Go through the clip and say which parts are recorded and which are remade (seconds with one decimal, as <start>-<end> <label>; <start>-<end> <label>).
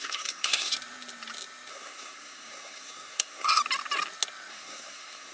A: 0.0-0.7 remade; 0.7-1.7 recorded; 1.7-3.6 remade; 3.6-4.5 recorded; 4.5-5.3 remade